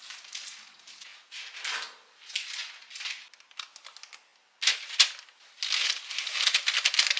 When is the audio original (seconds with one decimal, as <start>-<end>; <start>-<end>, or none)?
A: 0.0-7.2